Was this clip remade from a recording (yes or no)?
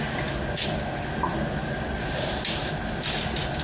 no